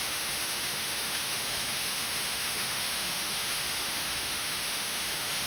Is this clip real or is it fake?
fake